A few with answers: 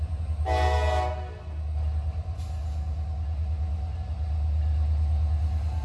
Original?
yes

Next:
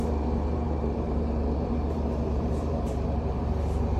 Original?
no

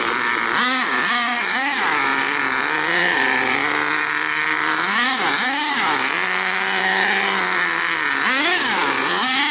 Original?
yes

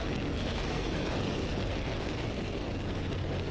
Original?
no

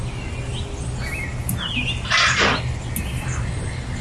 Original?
yes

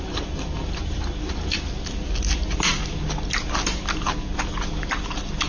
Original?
yes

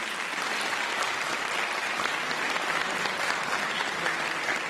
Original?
yes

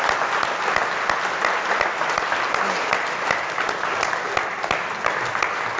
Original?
yes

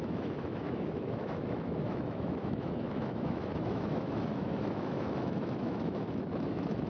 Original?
no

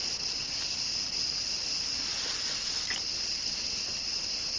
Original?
yes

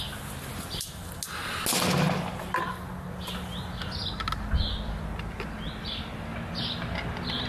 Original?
yes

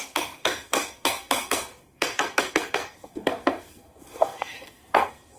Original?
no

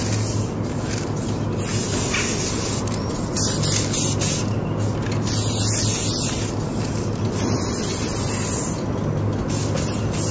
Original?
yes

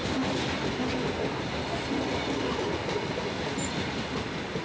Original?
yes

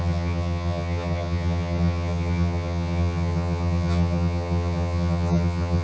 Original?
no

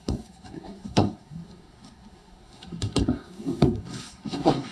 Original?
no